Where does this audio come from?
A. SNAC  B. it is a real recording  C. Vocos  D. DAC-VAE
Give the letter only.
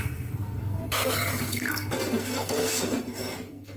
A